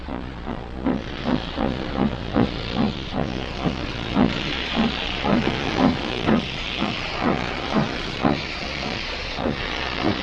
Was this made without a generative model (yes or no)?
no